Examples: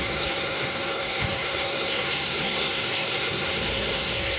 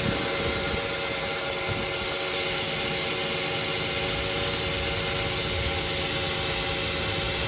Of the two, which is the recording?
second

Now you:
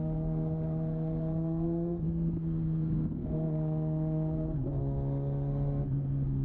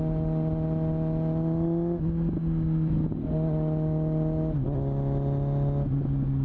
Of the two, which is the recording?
second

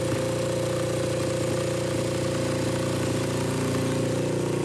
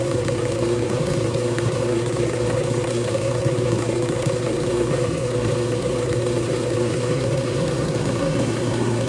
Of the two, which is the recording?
first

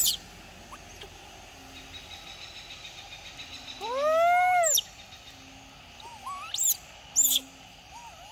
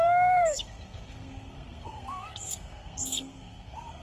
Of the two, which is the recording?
first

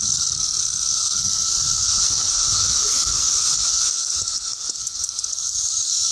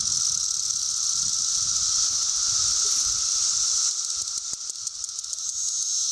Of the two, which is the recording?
second